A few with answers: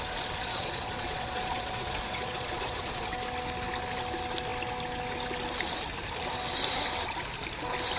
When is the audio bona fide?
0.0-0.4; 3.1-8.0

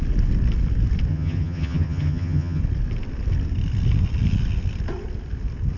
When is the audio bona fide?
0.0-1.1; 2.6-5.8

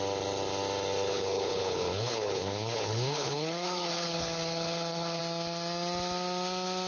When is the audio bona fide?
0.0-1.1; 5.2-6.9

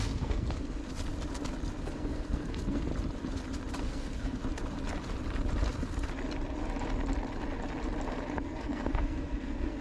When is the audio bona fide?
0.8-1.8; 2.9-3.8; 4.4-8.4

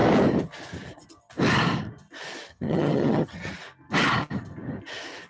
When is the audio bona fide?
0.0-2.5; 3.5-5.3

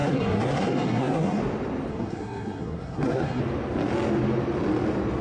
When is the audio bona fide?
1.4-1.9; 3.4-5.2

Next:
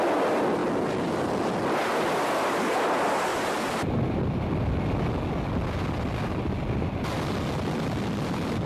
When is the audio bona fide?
3.3-6.3